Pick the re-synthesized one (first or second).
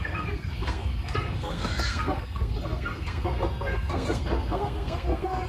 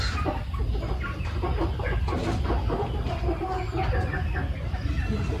first